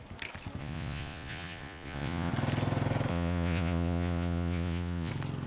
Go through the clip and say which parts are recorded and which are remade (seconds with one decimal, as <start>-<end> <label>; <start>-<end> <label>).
0.0-0.6 recorded; 0.6-2.3 remade; 2.3-3.1 recorded; 3.1-5.1 remade; 5.1-5.5 recorded